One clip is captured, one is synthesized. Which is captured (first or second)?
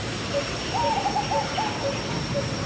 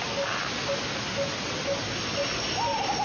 second